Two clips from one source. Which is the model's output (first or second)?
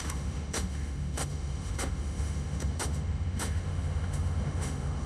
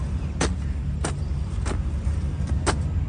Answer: first